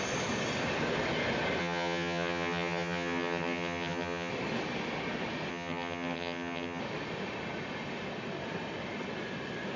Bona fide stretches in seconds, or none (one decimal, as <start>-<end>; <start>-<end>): 0.0-1.6; 4.3-5.5; 6.8-9.8